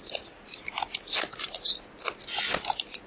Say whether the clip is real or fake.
real